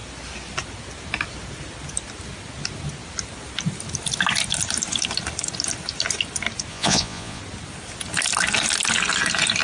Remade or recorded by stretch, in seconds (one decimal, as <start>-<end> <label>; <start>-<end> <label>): 0.0-6.7 recorded; 6.7-7.4 remade; 7.4-9.6 recorded